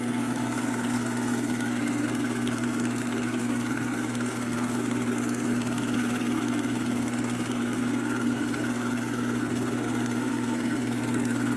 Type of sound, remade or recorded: remade